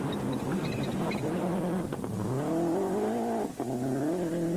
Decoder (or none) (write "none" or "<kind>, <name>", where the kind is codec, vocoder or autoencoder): none